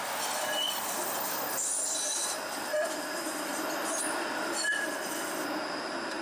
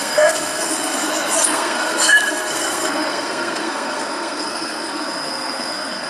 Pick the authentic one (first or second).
first